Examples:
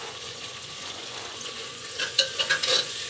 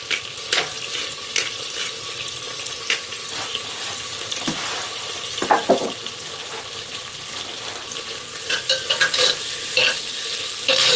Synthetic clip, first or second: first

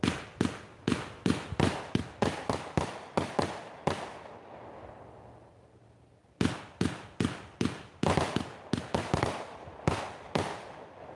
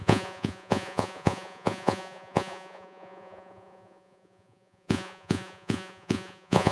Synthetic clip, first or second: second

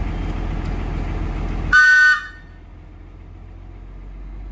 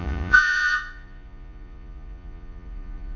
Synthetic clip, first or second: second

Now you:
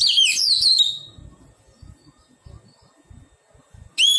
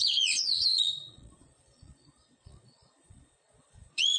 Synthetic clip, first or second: second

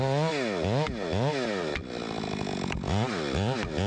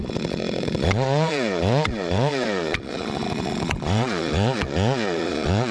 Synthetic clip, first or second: second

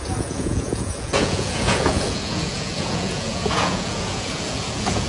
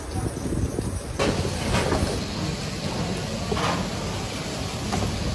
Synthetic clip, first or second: first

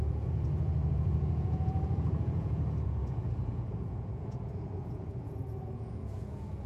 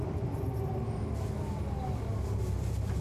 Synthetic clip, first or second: first